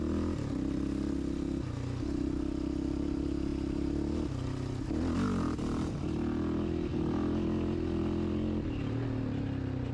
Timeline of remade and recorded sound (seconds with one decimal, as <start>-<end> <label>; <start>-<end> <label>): 0.0-9.9 recorded